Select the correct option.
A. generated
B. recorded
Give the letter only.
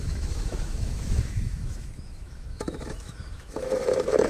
A